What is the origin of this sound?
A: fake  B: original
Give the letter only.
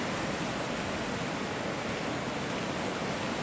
B